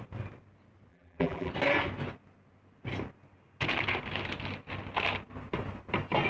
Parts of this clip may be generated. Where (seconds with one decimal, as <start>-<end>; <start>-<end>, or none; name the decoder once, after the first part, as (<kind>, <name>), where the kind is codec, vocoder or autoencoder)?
0.9-1.5 (vocoder, BigVGAN v2)